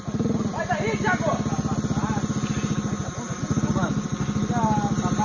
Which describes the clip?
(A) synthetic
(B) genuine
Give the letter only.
B